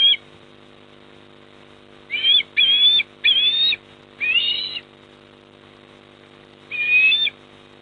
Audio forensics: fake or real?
real